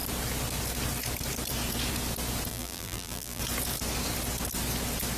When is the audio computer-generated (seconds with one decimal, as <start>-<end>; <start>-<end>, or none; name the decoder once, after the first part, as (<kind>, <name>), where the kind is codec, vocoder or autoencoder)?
2.5-3.4 (vocoder, BigVGAN v2)